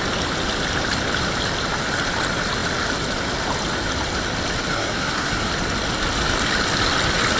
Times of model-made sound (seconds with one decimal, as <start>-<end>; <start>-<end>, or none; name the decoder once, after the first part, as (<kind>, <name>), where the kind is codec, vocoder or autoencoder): 4.7-5.5 (codec, SNAC)